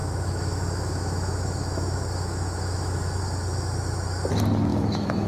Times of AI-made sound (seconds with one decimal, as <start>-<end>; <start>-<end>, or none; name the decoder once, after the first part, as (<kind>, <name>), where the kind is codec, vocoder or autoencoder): 0.0-3.2 (autoencoder, DAC-VAE); 4.7-5.3